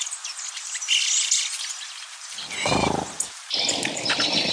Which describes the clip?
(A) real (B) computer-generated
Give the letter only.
A